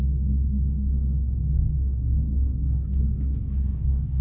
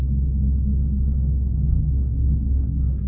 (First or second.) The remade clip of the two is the first